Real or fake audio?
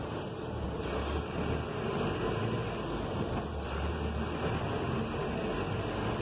real